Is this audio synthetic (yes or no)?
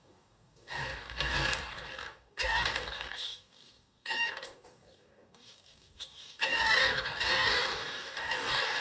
yes